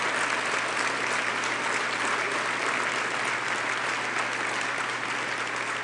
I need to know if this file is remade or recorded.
recorded